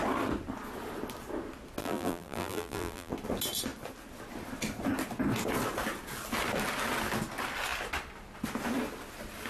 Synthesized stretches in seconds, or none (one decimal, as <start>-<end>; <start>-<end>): 1.8-3.1